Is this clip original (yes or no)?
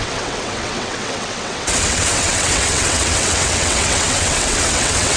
no